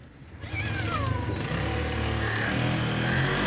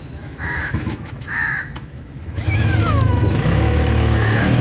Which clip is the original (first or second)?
first